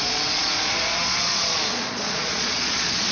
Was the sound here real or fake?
fake